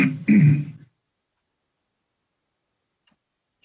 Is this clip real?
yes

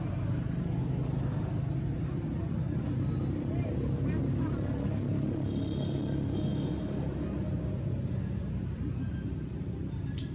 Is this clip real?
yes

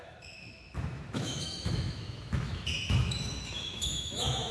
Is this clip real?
no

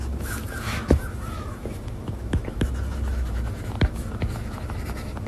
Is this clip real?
no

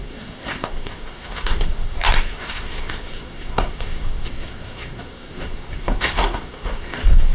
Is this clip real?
no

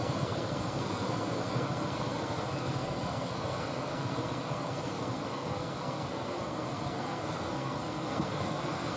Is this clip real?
no